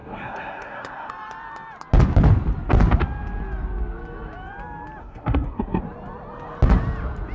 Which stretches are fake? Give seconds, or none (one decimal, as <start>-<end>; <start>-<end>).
0.0-1.1; 5.0-5.8